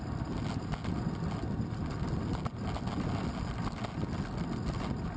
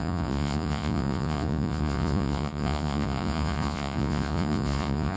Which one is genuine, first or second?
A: first